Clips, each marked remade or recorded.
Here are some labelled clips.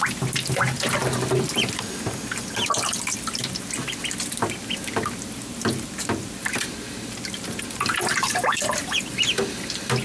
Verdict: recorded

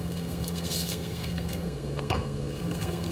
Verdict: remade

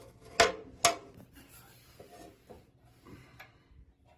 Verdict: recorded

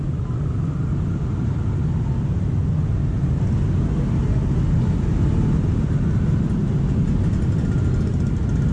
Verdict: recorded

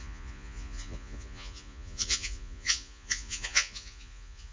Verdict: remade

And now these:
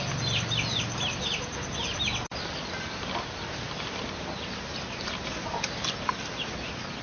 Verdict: recorded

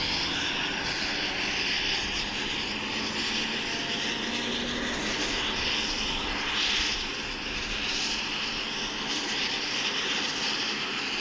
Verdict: recorded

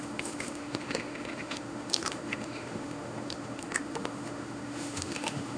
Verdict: remade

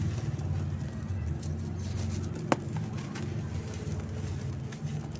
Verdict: recorded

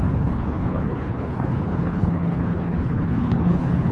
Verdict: remade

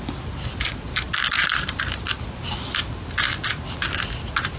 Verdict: recorded